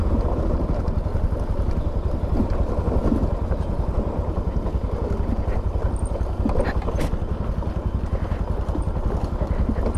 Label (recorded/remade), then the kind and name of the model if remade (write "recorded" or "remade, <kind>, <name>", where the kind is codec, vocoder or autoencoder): recorded